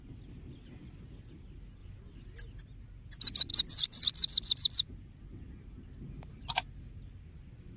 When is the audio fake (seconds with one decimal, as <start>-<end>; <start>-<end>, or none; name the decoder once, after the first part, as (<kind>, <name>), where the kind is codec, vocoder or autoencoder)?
none